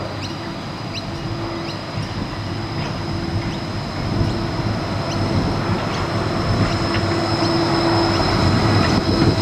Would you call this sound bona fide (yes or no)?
yes